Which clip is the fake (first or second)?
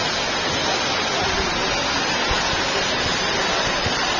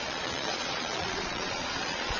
second